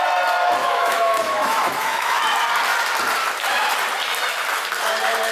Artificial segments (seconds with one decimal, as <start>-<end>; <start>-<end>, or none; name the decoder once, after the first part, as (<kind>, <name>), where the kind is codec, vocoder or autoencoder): 0.6-2.2 (autoencoder, DAC-VAE)